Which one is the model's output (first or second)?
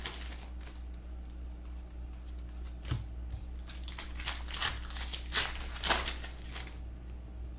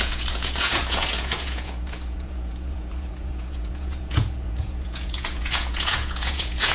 second